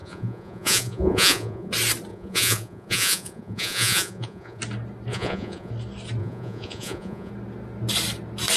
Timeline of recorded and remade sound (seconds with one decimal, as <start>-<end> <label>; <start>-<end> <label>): 0.0-1.7 remade; 1.7-2.1 recorded; 2.1-4.6 remade; 4.6-5.1 recorded; 5.1-5.7 remade; 5.7-6.2 recorded; 6.2-7.3 remade; 7.3-8.6 recorded